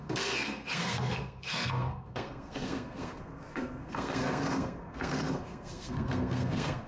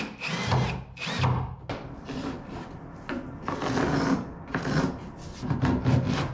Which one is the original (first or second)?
second